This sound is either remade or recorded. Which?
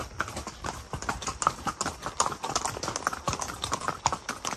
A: recorded